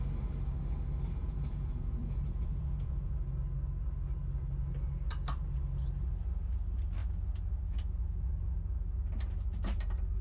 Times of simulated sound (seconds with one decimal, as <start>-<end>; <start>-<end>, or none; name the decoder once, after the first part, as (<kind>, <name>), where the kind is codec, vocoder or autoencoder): 1.2-3.1 (vocoder, Vocos)